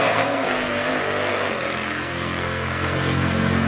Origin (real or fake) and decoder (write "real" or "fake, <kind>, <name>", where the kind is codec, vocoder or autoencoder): fake, codec, SNAC